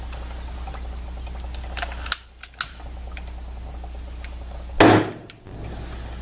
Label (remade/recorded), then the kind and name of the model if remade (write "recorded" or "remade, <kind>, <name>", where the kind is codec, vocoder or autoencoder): recorded